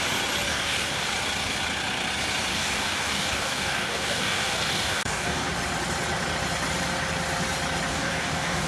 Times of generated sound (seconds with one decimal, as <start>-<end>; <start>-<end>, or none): 0.5-1.1; 2.5-5.5; 7.9-8.7